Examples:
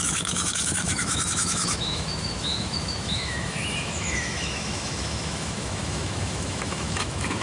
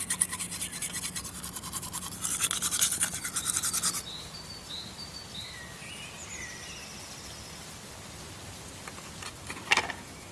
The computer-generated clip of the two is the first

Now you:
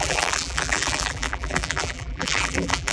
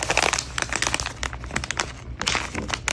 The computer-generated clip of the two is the first